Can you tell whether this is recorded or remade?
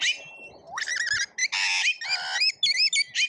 recorded